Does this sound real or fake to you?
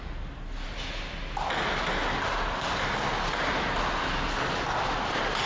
real